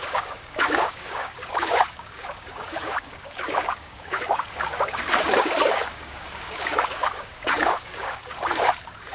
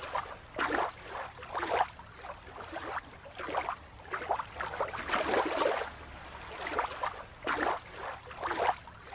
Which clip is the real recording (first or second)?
second